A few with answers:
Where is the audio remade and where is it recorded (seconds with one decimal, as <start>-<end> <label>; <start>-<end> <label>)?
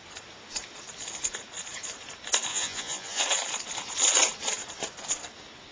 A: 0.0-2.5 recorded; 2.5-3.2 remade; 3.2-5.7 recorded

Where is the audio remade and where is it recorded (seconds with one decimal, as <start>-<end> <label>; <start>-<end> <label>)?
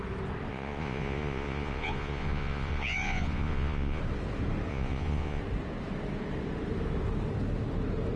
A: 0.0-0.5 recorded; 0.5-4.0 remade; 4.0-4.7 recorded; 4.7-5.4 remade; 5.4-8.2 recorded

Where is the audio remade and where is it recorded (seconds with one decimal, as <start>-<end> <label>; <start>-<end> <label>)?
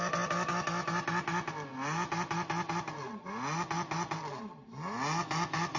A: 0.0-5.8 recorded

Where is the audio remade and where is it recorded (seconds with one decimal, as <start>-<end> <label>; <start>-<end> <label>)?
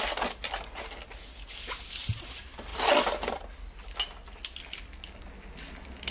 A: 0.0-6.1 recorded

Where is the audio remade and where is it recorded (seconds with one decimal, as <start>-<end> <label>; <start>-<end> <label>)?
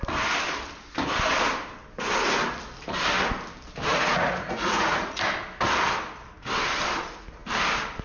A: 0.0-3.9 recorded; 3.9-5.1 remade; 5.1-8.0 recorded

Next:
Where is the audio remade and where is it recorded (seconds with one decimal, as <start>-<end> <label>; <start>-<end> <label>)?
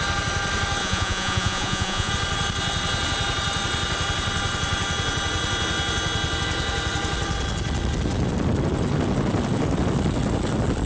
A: 0.0-0.8 recorded; 0.8-2.1 remade; 2.1-10.9 recorded